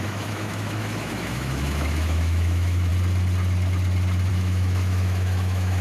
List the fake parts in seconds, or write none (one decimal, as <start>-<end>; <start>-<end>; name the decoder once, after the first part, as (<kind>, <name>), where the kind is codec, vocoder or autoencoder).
0.0-2.9 (autoencoder, DAC-VAE); 4.3-5.8